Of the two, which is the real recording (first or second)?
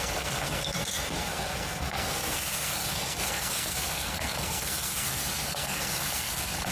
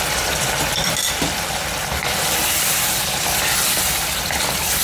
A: second